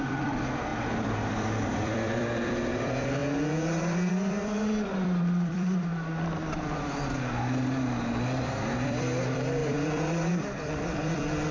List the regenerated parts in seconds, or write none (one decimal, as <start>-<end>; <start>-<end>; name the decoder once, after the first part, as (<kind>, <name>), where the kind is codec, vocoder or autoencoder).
0.0-3.2 (vocoder, BigVGAN v2); 4.1-5.9; 8.4-11.5